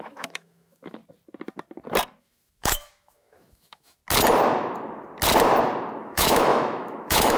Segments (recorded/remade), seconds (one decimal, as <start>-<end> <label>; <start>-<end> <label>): 0.0-1.0 remade; 1.0-2.2 recorded; 2.2-4.0 remade; 4.0-6.0 recorded; 6.0-7.4 remade